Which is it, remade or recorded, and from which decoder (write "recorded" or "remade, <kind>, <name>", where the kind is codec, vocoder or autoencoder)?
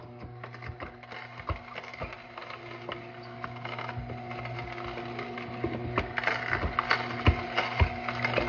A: recorded